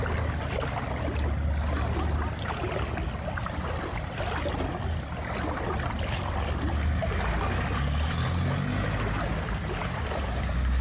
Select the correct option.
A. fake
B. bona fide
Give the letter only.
B